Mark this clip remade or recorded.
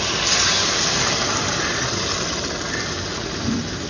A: recorded